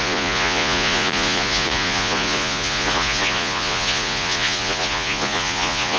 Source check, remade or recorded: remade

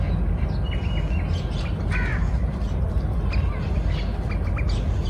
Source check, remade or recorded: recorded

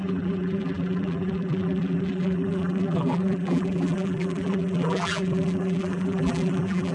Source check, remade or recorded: remade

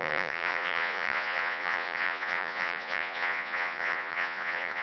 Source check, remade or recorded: remade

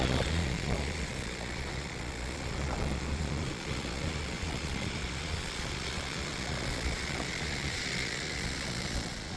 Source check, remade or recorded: remade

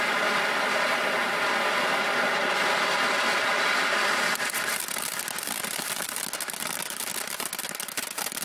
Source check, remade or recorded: recorded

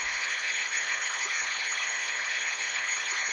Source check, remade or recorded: remade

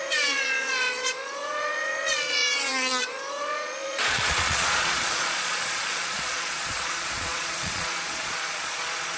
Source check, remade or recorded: remade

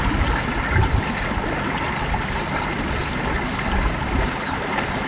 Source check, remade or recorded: recorded